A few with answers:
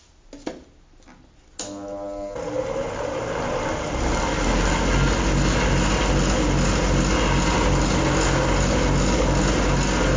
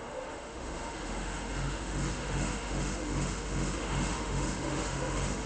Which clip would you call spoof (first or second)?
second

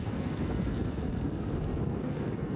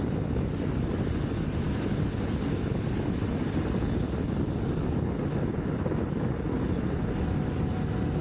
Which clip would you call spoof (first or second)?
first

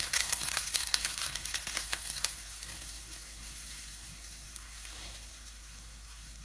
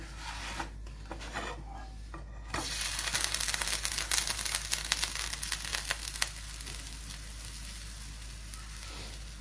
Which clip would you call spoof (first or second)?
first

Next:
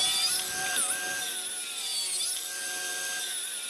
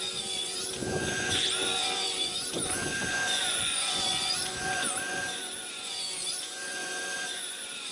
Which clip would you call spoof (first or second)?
second